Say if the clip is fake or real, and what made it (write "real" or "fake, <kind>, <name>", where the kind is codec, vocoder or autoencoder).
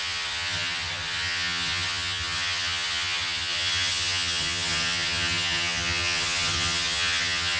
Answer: fake, vocoder, HiFi-GAN